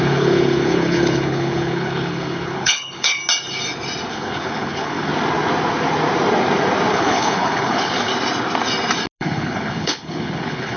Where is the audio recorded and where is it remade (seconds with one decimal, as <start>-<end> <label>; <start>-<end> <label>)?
0.0-3.2 remade; 3.2-4.1 recorded; 4.1-5.1 remade; 5.1-6.9 recorded; 6.9-8.1 remade; 8.1-9.2 recorded; 9.2-10.8 remade